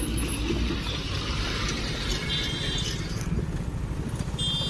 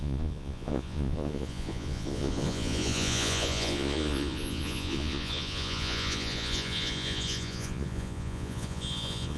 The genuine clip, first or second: first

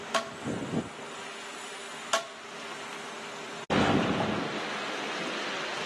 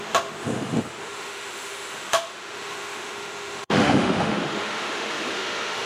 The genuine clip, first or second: first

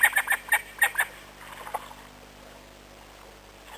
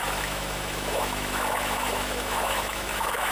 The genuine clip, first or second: first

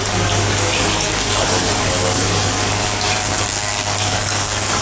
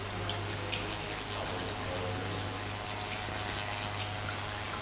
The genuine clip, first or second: second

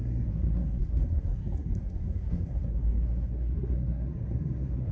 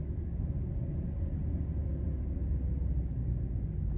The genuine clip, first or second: second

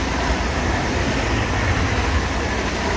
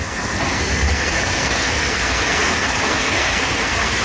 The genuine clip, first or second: first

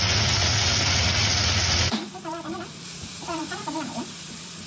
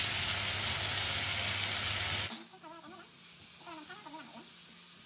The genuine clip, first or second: second